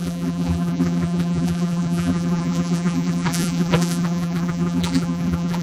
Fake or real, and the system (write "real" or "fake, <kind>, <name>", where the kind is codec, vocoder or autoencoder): fake, vocoder, BigVGAN v2